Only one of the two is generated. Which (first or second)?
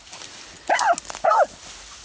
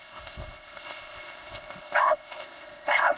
second